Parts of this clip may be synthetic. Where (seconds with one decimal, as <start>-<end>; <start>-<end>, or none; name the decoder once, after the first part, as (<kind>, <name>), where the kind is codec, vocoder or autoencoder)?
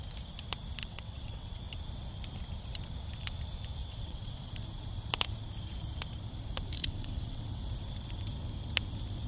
0.8-1.6 (vocoder, WaveNeXt); 3.8-4.5; 6.8-7.6